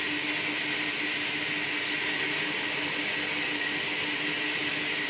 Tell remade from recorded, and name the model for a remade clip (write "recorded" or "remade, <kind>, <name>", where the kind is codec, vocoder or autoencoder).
recorded